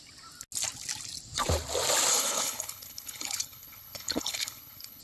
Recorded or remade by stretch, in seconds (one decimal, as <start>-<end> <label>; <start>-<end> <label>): 0.0-2.1 recorded; 2.1-5.0 remade